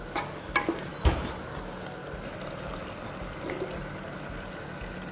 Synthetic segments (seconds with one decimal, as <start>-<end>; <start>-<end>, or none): 0.9-1.4